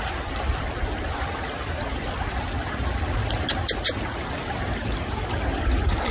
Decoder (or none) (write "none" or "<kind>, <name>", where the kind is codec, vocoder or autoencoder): none